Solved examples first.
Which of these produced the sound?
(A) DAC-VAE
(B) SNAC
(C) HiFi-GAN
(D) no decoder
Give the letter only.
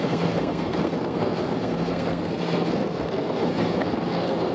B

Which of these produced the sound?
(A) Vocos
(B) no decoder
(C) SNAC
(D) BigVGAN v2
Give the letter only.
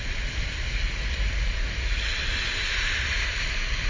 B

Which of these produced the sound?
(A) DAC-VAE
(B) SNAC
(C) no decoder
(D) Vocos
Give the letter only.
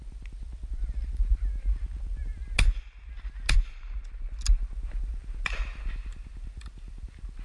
C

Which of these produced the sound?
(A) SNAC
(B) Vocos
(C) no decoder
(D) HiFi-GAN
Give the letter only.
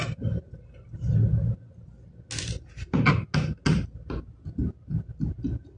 C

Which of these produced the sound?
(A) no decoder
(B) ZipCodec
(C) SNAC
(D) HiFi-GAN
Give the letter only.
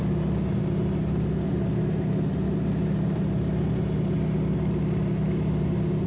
A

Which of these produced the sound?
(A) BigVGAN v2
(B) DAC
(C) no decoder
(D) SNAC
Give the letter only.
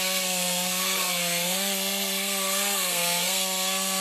D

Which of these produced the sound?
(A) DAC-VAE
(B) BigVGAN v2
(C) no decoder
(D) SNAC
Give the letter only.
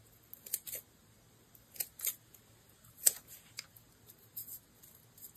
C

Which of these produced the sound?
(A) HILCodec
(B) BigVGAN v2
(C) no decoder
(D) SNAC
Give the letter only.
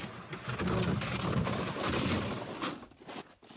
C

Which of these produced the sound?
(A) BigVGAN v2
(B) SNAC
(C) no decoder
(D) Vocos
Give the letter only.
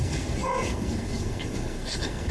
B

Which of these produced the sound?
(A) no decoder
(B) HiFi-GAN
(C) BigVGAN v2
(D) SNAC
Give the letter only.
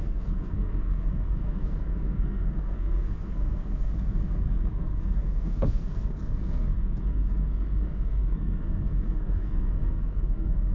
D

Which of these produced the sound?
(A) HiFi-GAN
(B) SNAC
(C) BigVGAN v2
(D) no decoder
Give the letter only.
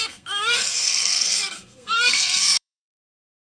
B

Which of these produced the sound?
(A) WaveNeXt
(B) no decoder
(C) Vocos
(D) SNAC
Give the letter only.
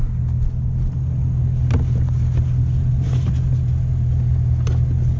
B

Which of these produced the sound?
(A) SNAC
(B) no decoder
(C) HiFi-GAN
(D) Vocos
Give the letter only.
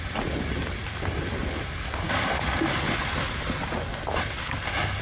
B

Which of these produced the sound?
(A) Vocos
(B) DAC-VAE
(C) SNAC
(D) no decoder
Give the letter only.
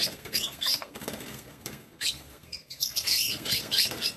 C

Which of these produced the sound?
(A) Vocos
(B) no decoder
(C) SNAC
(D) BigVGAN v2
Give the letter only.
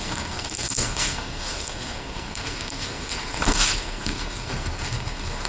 C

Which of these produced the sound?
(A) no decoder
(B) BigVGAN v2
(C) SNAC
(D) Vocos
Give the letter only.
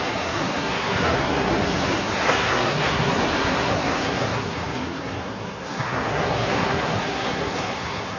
C